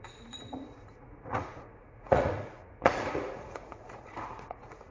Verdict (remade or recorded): remade